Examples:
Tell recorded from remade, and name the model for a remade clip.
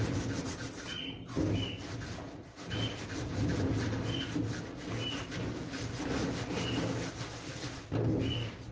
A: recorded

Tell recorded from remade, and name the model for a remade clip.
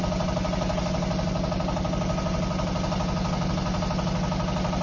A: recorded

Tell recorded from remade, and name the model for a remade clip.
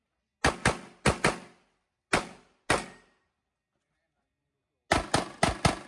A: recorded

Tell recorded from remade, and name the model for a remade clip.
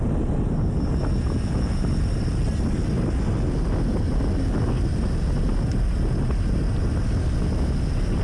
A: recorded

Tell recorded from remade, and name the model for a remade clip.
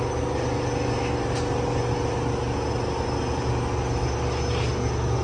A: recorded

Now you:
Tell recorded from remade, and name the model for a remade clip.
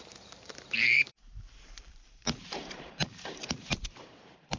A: remade, vocoder, BigVGAN v2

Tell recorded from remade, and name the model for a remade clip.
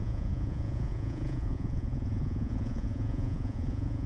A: remade, vocoder, Vocos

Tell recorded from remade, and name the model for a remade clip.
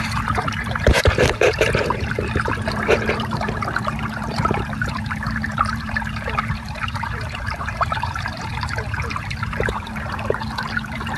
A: remade, vocoder, BigVGAN v2